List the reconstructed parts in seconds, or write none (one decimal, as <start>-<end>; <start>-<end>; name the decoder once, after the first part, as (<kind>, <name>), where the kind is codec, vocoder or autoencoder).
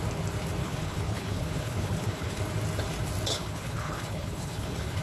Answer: 0.6-2.4 (codec, HILCodec); 3.3-5.0